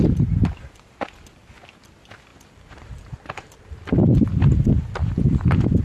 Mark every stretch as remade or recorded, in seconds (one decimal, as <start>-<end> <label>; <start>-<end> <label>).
0.0-2.3 recorded; 2.3-5.8 remade